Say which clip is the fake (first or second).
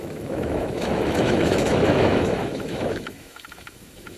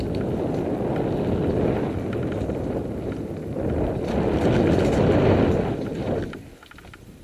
first